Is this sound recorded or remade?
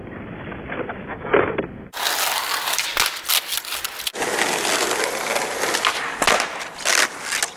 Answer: recorded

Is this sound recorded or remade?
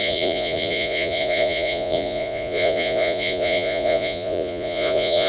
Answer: remade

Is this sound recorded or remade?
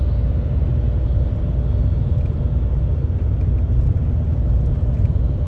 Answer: recorded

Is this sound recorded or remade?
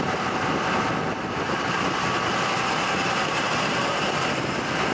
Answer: recorded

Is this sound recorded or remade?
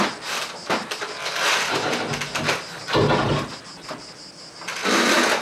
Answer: recorded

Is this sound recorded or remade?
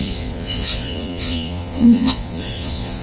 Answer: remade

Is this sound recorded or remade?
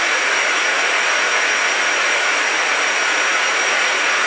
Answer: remade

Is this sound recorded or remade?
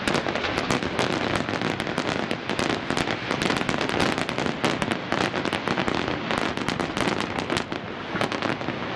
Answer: recorded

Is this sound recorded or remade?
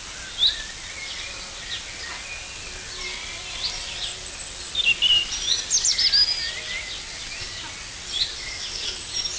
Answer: recorded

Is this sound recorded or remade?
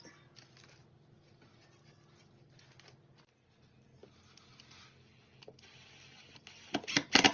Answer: recorded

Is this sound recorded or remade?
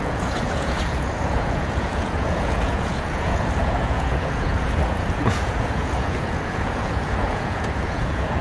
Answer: remade